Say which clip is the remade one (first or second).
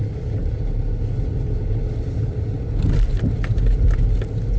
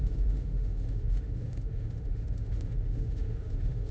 second